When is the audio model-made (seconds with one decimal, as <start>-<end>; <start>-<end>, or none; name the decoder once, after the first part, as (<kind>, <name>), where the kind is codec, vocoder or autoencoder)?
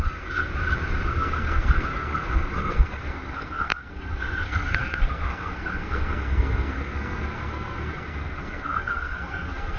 0.0-0.5 (codec, SNAC); 1.1-9.8